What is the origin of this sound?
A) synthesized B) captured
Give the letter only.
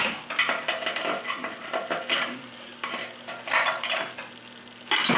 B